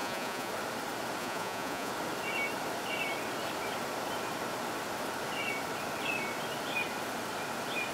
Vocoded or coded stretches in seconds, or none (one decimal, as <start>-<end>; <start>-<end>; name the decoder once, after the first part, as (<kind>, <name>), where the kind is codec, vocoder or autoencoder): 0.0-0.5 (vocoder, Vocos); 1.2-1.9